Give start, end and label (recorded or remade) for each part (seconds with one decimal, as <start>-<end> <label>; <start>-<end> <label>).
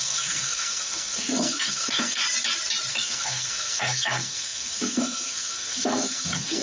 0.0-2.2 remade; 2.2-2.9 recorded; 2.9-6.6 remade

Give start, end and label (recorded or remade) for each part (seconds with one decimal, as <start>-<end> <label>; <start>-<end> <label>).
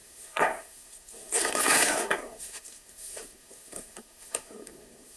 0.0-5.2 remade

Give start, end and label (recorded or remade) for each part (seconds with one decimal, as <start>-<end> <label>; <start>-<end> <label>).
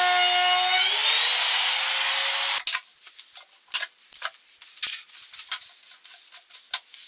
0.0-7.1 recorded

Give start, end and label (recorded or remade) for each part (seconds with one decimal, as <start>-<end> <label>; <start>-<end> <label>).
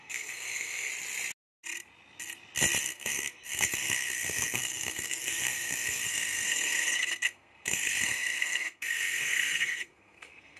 0.0-0.9 remade; 0.9-2.8 recorded; 2.8-10.6 remade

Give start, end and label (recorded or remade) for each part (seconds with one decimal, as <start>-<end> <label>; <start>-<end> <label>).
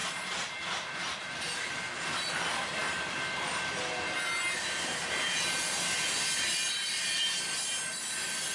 0.0-8.5 recorded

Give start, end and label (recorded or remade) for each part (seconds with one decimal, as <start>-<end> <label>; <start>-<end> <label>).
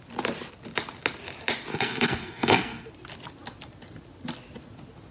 0.0-1.7 recorded; 1.7-2.9 remade; 2.9-5.1 recorded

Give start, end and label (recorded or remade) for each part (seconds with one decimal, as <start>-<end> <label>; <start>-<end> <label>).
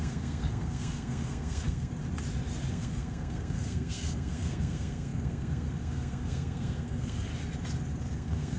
0.0-1.9 remade; 1.9-2.7 recorded; 2.7-7.3 remade; 7.3-8.0 recorded; 8.0-8.6 remade